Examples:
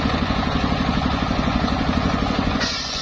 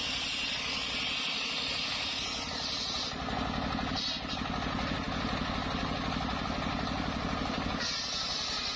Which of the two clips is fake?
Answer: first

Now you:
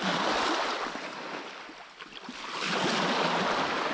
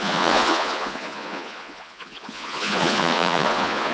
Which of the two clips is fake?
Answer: second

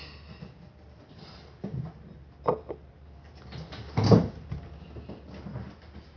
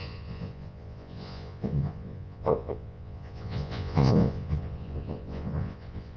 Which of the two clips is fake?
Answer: second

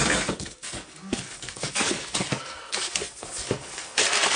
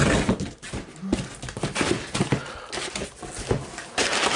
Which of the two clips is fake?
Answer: first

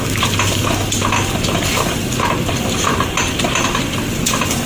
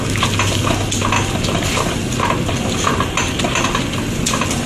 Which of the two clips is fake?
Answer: first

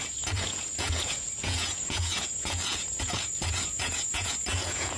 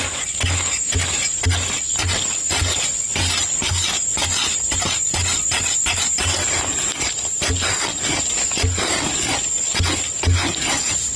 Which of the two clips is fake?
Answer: first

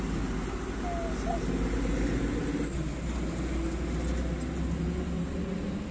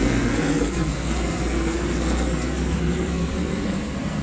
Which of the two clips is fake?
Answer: second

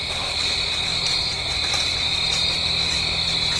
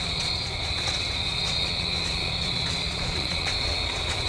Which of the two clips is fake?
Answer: second